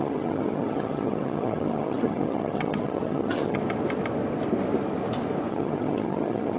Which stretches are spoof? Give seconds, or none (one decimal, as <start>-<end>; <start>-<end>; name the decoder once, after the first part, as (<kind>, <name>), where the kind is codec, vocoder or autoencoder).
0.0-3.6 (vocoder, HiFi-GAN); 5.5-6.6